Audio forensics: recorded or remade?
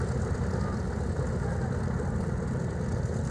recorded